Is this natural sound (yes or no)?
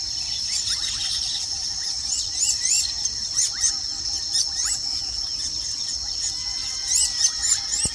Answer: yes